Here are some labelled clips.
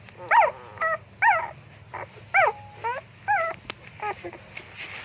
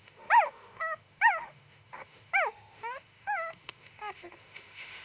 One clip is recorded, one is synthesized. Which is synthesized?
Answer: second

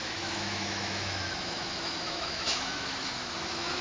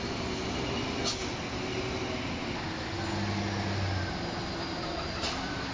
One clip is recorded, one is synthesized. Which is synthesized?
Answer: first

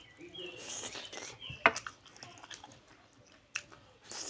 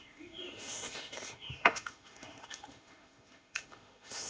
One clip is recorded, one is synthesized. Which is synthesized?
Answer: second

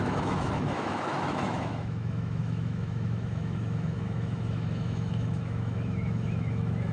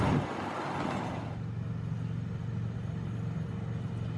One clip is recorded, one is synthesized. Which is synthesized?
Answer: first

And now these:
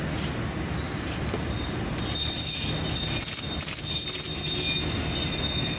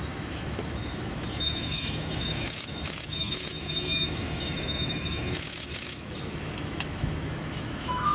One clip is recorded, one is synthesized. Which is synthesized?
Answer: second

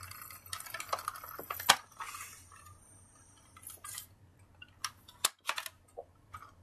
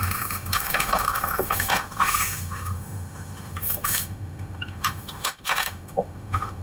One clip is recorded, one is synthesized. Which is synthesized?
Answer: second